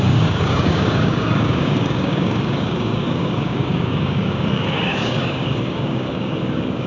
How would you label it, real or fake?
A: fake